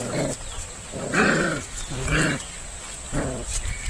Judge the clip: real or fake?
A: fake